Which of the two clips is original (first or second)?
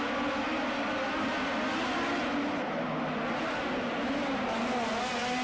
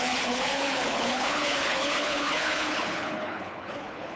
first